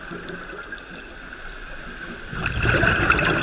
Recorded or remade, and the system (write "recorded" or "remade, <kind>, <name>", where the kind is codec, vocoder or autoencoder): recorded